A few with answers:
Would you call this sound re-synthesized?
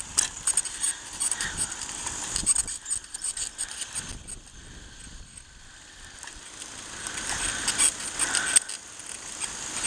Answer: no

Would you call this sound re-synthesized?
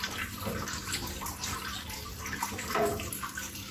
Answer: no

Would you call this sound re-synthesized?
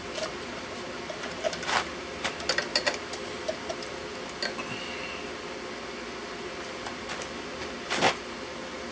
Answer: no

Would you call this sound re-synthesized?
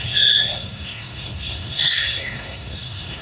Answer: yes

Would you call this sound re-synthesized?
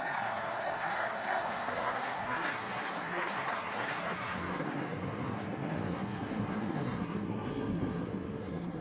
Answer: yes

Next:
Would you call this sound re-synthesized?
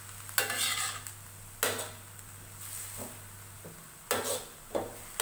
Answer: no